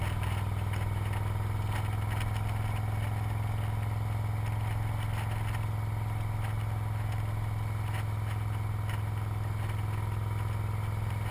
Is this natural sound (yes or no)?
yes